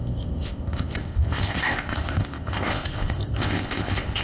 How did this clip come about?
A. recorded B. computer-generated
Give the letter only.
B